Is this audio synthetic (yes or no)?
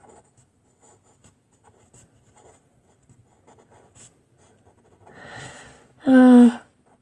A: no